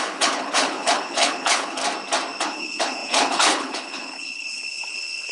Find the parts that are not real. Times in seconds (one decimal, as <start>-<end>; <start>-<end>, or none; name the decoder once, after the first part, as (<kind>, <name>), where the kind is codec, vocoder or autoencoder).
0.0-1.8 (codec, HILCodec); 2.4-5.3